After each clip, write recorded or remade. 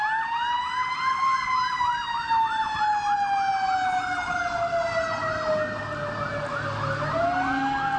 recorded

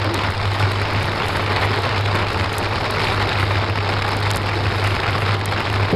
recorded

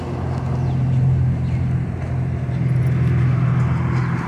recorded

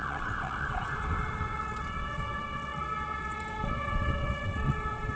remade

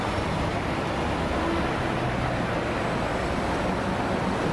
recorded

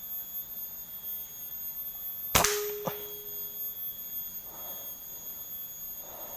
recorded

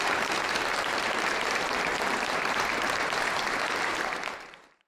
remade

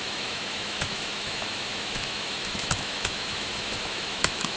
remade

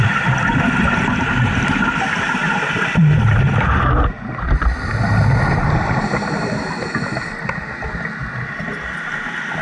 recorded